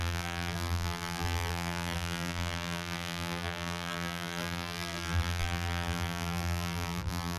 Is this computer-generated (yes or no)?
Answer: yes